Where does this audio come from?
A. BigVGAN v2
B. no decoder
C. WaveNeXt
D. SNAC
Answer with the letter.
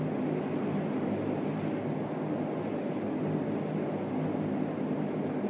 B